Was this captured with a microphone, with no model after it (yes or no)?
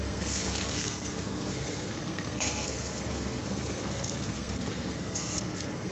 no